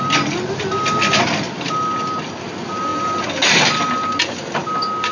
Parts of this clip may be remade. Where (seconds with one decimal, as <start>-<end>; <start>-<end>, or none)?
none